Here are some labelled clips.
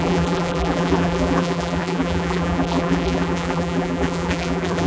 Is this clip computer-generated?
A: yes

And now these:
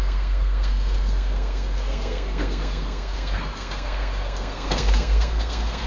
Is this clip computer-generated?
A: yes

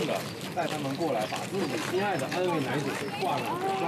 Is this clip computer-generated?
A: no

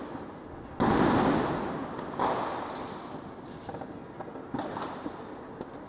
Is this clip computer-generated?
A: no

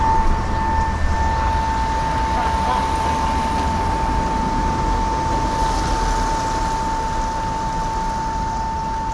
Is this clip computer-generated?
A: no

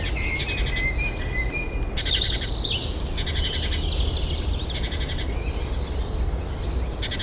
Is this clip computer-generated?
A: no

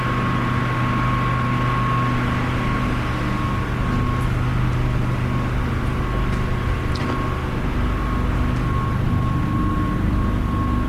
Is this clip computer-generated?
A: no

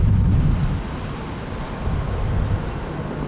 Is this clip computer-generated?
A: no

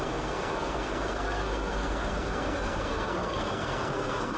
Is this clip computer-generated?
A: yes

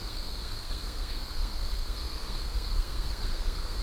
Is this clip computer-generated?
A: yes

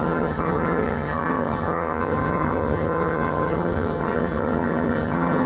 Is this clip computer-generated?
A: yes